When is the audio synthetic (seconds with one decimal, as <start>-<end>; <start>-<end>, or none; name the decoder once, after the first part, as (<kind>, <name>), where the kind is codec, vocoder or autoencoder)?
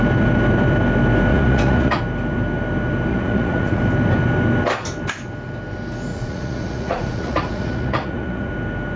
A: 1.3-2.0 (vocoder, Vocos); 3.1-3.8; 6.1-8.5